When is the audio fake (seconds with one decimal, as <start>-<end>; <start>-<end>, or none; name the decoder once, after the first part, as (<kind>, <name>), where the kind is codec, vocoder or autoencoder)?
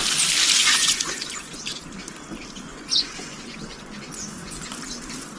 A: 0.6-1.6 (vocoder, Vocos); 2.7-4.6